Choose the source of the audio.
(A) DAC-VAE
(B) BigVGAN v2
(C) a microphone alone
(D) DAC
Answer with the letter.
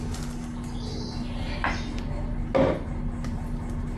C